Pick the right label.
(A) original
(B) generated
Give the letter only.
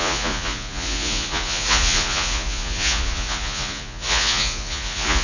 B